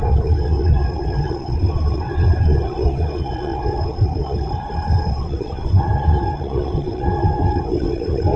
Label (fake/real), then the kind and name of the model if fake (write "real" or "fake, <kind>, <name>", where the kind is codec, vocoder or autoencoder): fake, vocoder, WaveNeXt